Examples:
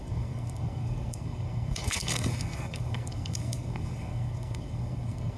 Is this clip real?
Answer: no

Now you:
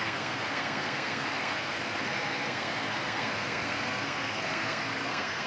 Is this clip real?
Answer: no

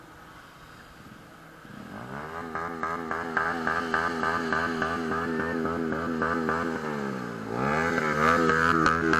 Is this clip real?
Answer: yes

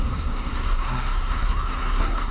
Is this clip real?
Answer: no